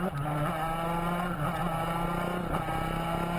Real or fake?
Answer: real